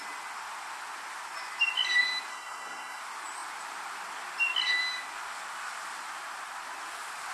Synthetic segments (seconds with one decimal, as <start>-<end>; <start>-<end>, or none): 2.3-3.0